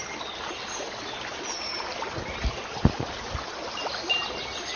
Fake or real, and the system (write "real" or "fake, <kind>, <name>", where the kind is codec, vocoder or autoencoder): real